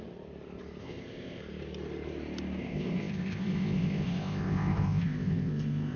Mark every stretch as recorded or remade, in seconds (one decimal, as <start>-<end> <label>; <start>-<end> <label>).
0.0-0.8 recorded; 0.8-1.4 remade; 1.4-2.6 recorded; 2.6-6.0 remade